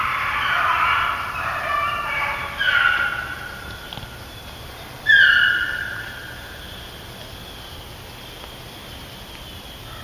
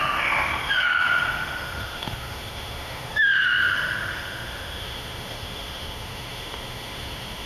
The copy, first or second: second